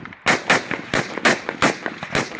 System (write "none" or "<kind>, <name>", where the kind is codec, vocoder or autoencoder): none